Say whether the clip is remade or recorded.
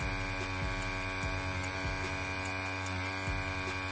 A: recorded